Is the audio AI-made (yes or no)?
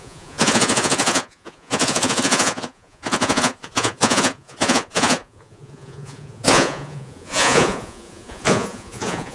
yes